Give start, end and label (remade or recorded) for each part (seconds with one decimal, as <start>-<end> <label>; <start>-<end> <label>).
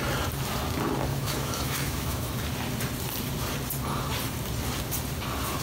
0.0-1.1 recorded; 1.1-2.3 remade; 2.3-5.6 recorded